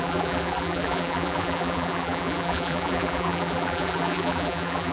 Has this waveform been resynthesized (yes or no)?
yes